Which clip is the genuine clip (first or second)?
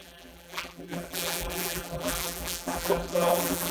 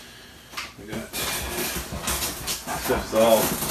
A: second